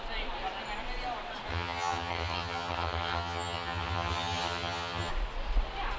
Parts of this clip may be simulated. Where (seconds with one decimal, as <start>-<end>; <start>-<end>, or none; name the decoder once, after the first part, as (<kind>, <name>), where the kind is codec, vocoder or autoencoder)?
1.5-5.1 (vocoder, HiFi-GAN)